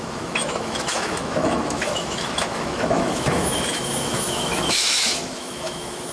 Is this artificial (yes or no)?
yes